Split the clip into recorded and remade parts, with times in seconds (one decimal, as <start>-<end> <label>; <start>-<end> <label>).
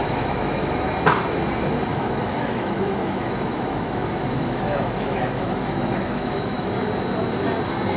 0.0-0.9 remade; 0.9-1.9 recorded; 1.9-6.7 remade; 6.7-8.0 recorded